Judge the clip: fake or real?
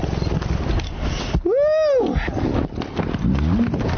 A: real